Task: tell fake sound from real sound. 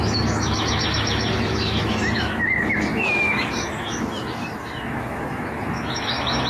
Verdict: fake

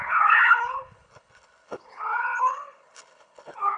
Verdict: fake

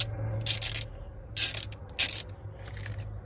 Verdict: real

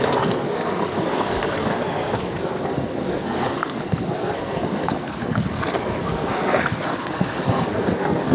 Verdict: fake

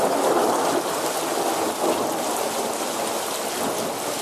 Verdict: real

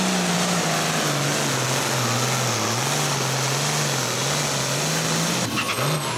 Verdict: real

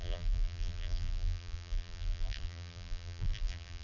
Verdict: fake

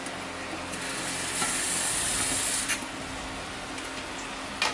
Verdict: real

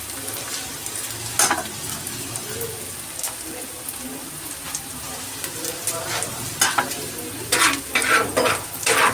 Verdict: real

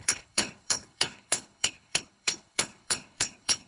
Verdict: fake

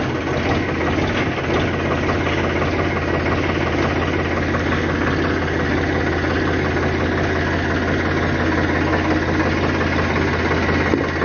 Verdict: real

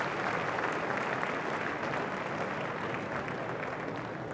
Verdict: real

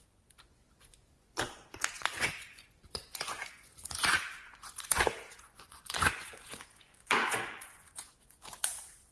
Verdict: fake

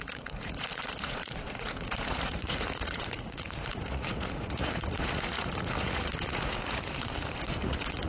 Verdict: fake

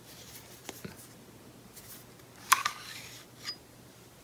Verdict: real